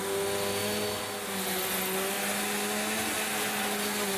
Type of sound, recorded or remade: recorded